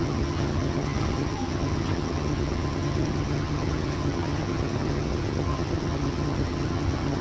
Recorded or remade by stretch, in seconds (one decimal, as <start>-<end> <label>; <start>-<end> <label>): 0.0-7.2 remade